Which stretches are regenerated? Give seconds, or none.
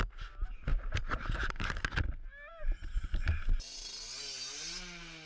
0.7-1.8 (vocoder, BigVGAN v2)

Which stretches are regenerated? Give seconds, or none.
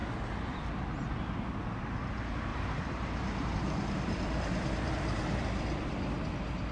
2.5-5.4 (vocoder, BigVGAN v2)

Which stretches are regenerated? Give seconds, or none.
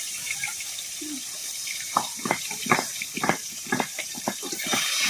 0.0-5.1 (vocoder, BigVGAN v2)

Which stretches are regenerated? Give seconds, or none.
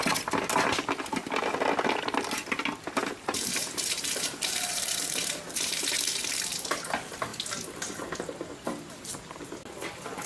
3.0-6.2 (vocoder, BigVGAN v2)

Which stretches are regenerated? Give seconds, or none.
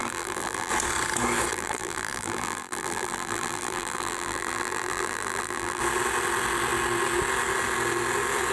0.0-0.7 (vocoder, BigVGAN v2); 1.5-5.8